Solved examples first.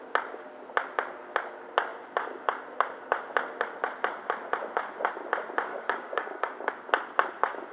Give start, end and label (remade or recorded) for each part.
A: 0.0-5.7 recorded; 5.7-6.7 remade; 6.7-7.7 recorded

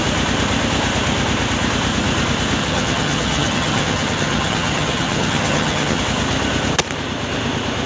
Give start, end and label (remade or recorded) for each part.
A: 0.0-2.6 recorded; 2.6-6.0 remade; 6.0-7.9 recorded